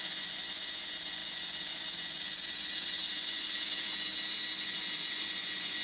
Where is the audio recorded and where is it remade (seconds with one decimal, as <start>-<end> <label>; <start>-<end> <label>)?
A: 0.0-4.1 remade; 4.1-4.6 recorded; 4.6-5.8 remade